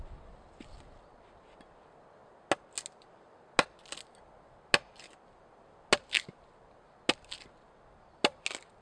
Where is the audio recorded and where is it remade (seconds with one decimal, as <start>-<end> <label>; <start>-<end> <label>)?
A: 0.0-8.8 recorded